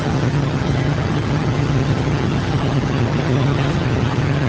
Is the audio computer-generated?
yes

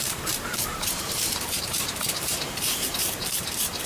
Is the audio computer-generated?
yes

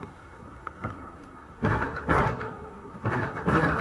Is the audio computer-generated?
yes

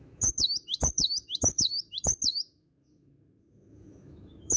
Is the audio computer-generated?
yes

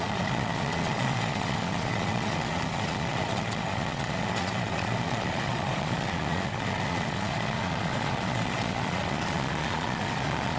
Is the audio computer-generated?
yes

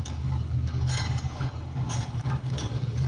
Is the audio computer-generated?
yes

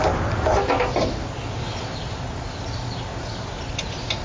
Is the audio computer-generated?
no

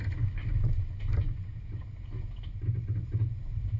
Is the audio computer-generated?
no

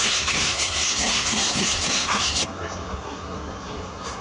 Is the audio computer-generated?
yes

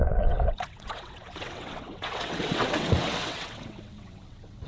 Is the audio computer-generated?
yes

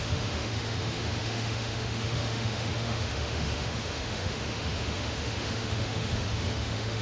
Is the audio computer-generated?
yes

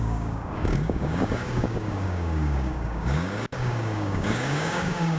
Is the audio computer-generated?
yes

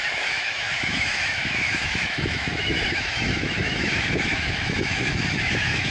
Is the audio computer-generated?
yes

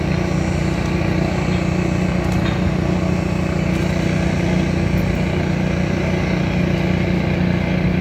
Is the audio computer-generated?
no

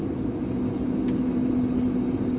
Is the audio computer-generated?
no